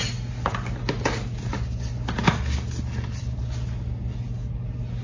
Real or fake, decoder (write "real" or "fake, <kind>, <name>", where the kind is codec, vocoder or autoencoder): real